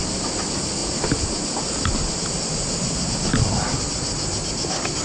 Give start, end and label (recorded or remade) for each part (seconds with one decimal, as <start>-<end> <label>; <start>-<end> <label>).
0.0-5.0 recorded